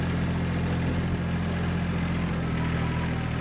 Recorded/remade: recorded